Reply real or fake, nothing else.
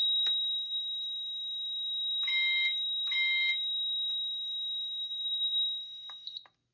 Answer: real